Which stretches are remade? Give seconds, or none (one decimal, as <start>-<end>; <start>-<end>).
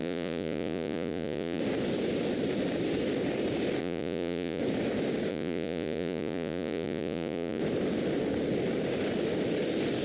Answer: 0.0-1.6; 3.8-4.6; 5.3-7.6